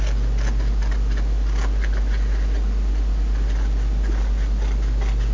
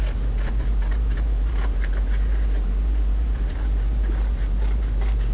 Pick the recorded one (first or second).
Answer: first